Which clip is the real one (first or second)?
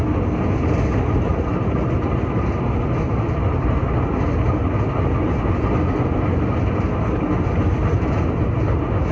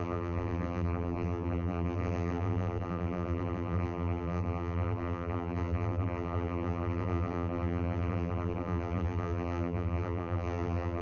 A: first